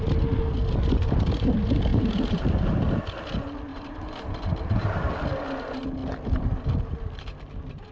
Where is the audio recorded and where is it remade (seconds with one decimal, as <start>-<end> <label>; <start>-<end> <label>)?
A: 0.0-1.9 recorded; 1.9-3.0 remade; 3.0-3.7 recorded; 3.7-5.1 remade; 5.1-7.9 recorded